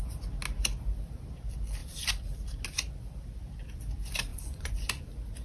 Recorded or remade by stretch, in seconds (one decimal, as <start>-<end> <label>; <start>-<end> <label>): 0.0-4.3 recorded; 4.3-4.9 remade; 4.9-5.4 recorded